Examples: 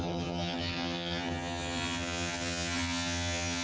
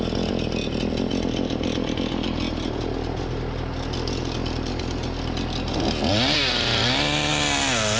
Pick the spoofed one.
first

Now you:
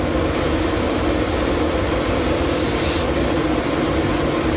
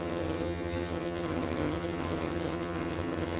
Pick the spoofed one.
second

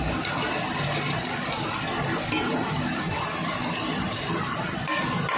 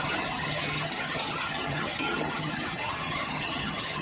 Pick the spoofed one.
second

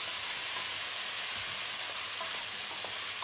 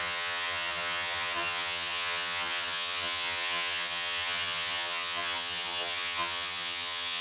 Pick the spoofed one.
second